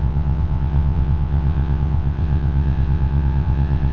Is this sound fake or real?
fake